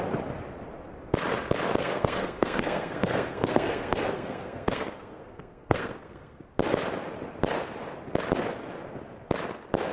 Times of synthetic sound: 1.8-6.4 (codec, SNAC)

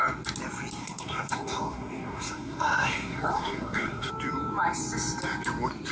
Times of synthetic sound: 0.8-4.1 (codec, SNAC)

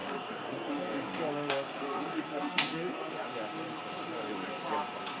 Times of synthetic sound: 0.0-3.1 (codec, SNAC)